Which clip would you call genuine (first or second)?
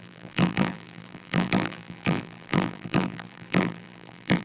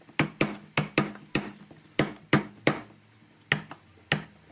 second